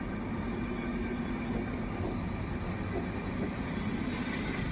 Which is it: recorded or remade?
recorded